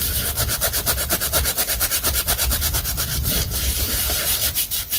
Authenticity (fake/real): fake